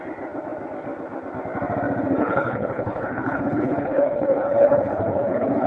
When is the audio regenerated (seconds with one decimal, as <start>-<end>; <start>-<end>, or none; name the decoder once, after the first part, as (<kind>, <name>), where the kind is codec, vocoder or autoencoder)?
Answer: 2.2-5.7 (codec, HILCodec)